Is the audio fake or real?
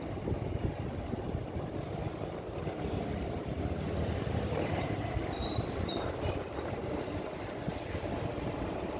real